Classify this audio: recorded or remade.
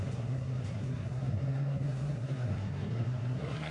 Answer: remade